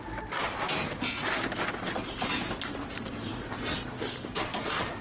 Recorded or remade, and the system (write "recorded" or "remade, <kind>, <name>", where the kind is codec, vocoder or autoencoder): recorded